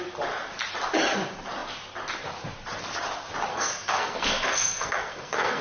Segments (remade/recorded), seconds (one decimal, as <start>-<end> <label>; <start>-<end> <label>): 0.0-3.5 recorded; 3.5-5.6 remade